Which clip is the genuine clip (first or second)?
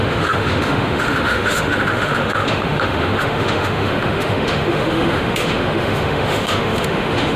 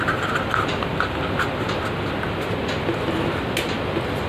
second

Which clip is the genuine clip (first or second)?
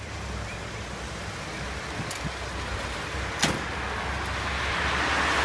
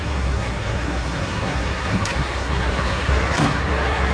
first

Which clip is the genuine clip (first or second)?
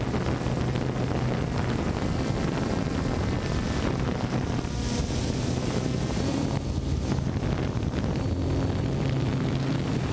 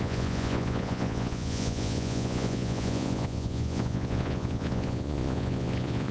first